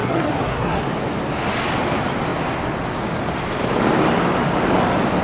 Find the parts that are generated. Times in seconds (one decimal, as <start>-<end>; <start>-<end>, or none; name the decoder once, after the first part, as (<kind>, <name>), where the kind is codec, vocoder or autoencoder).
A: 0.0-0.8 (codec, SNAC)